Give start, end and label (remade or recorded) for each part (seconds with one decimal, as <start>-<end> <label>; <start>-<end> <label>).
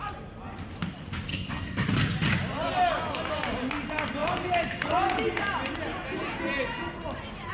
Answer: 0.0-1.3 recorded; 1.3-1.9 remade; 1.9-7.5 recorded